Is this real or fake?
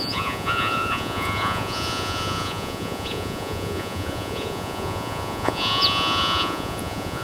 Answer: fake